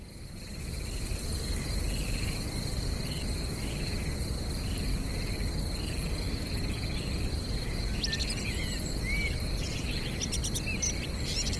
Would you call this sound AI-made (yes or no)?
no